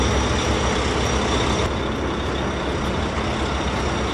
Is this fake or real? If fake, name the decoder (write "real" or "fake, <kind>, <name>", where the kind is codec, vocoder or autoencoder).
real